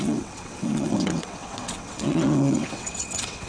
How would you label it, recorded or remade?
remade